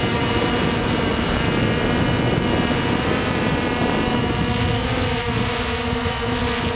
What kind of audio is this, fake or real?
real